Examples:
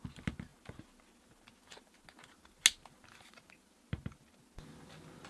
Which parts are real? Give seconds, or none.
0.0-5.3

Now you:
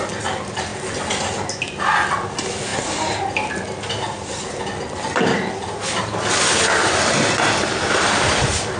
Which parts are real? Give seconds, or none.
0.0-8.8